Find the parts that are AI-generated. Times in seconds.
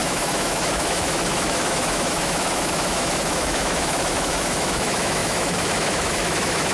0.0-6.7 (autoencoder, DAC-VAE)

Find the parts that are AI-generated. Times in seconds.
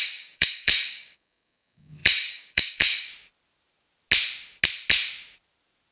0.0-3.1 (codec, DAC)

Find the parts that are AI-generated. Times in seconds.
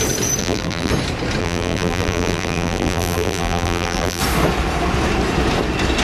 0.4-0.9 (vocoder, BigVGAN v2); 1.4-4.2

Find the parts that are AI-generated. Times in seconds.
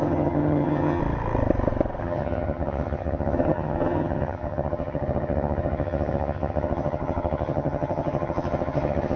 0.0-1.0 (vocoder, HiFi-GAN); 2.0-9.2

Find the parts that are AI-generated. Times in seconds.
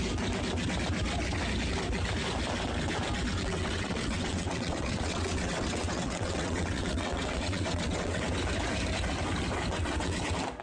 3.3-8.2 (vocoder, WaveNeXt); 9.7-10.2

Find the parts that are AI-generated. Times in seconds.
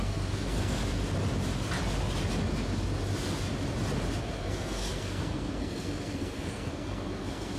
0.0-0.8 (codec, SNAC); 4.2-7.6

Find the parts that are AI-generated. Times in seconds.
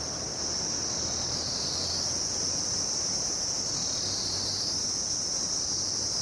1.5-3.3 (vocoder, BigVGAN v2)